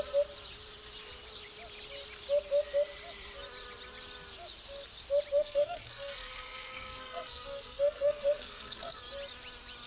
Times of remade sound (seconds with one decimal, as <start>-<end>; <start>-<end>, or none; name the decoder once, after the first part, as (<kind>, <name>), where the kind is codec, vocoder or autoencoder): 5.4-9.0 (codec, SNAC)